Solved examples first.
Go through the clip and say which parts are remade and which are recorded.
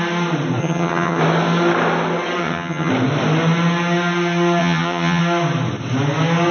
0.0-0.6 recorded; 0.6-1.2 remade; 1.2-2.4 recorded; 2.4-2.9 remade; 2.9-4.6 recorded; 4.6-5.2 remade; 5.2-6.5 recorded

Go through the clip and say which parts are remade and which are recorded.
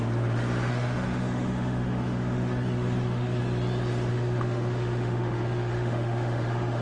0.0-0.7 recorded; 0.7-3.4 remade; 3.4-4.1 recorded; 4.1-6.8 remade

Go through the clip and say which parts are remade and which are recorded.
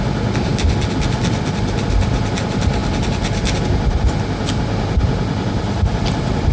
0.0-6.5 recorded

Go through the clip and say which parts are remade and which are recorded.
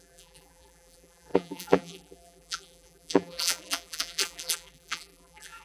0.0-5.6 remade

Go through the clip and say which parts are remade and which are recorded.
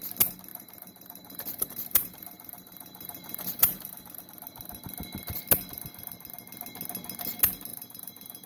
0.0-0.5 recorded; 0.5-4.2 remade; 4.2-7.7 recorded; 7.7-8.5 remade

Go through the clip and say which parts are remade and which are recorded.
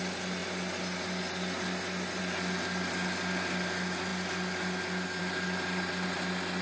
0.0-6.6 recorded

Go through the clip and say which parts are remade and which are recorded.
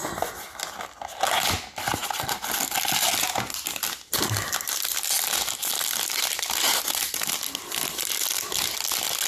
0.0-9.3 recorded